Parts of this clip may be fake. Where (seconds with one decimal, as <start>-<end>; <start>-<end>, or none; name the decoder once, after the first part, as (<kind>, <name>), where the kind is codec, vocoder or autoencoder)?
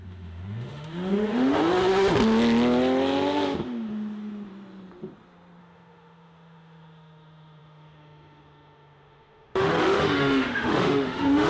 0.0-1.6 (autoencoder, DAC-VAE); 5.6-11.5